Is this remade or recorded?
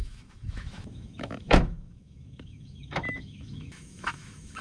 remade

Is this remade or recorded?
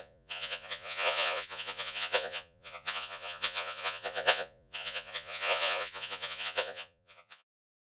remade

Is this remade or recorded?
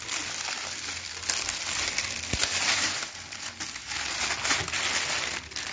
recorded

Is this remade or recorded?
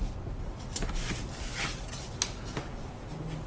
recorded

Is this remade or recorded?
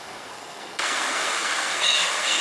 remade